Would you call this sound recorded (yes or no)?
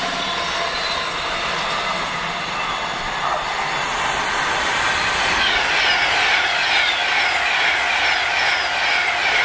yes